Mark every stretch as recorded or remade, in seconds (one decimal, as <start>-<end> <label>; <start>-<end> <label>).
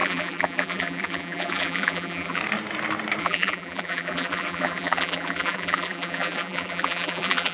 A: 0.0-2.4 remade; 2.4-3.2 recorded; 3.2-7.5 remade